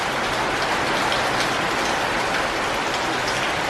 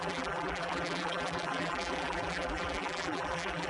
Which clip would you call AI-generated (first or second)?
second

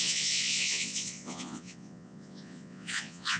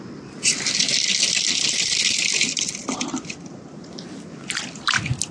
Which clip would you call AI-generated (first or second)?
first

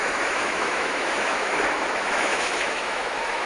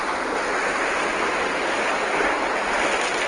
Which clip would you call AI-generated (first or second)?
first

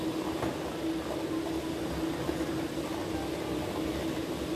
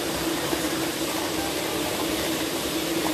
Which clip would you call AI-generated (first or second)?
second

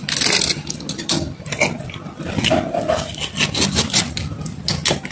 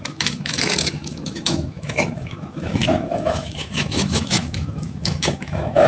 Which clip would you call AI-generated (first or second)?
second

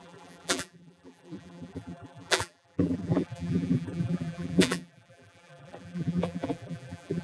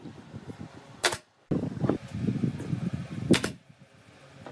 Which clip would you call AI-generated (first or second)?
first